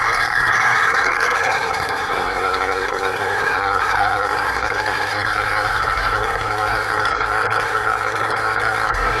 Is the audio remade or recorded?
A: remade